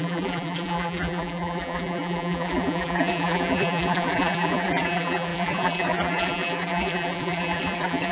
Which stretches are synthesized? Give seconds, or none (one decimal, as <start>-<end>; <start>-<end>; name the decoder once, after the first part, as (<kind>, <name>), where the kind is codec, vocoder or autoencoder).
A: 0.0-8.1 (vocoder, BigVGAN v2)